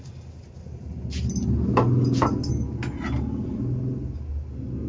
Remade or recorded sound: recorded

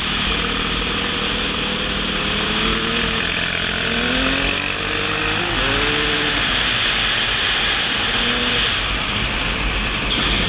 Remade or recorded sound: recorded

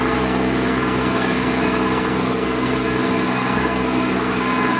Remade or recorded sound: remade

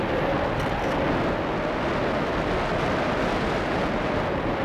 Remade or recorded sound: recorded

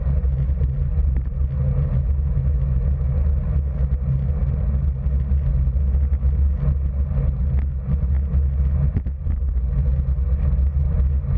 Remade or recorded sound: recorded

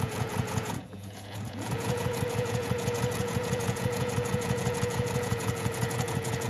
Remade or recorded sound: remade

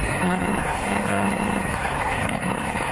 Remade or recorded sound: remade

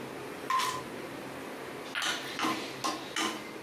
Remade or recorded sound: recorded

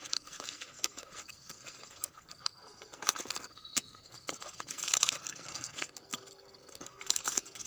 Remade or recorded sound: remade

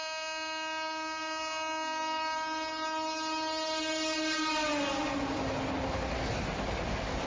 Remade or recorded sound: recorded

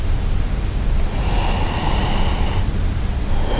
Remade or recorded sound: recorded